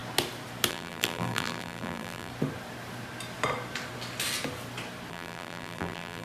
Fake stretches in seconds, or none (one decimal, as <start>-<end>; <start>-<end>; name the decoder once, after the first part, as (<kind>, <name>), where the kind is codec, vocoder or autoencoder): 0.7-2.3 (vocoder, BigVGAN v2); 5.1-6.2